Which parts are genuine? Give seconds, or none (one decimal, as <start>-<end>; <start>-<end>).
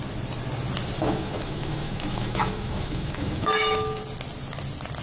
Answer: 0.0-1.0; 4.0-5.0